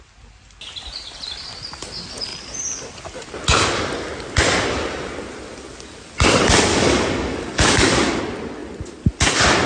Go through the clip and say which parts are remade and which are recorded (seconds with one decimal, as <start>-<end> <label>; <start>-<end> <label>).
0.0-6.7 recorded; 6.7-8.2 remade; 8.2-9.7 recorded

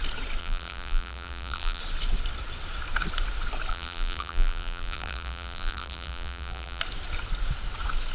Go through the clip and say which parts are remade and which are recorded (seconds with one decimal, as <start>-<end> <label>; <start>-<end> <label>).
0.0-0.4 recorded; 0.4-1.8 remade; 1.8-3.7 recorded; 3.7-6.8 remade; 6.8-8.1 recorded